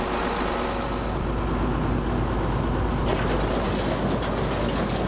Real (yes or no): yes